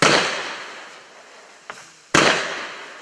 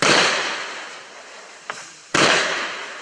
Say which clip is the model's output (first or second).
second